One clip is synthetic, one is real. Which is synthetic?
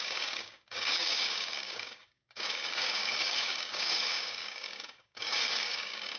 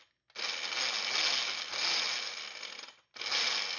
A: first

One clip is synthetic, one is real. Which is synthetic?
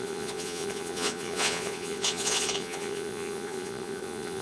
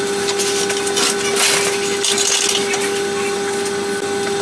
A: first